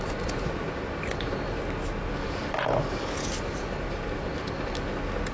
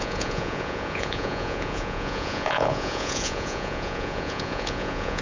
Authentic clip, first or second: first